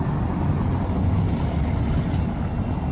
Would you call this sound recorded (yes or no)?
yes